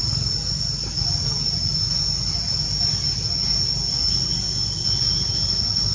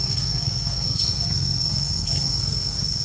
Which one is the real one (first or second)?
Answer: first